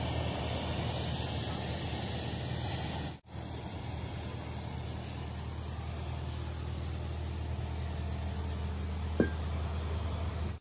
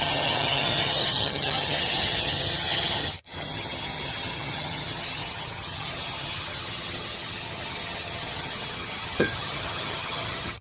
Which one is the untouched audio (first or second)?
first